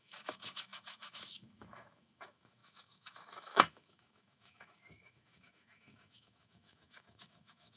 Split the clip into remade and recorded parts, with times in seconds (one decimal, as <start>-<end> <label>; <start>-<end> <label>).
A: 0.0-7.8 remade